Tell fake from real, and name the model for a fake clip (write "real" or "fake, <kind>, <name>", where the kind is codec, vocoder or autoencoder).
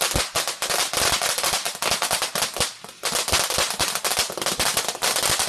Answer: real